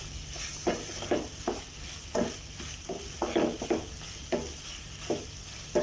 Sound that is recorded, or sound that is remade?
recorded